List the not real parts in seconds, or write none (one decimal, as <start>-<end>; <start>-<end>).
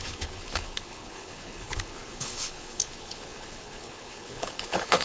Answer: 0.0-5.0